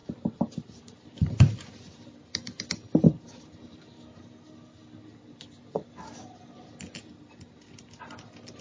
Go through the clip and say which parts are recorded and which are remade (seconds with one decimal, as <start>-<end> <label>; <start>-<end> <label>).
0.0-4.2 remade; 4.2-8.6 recorded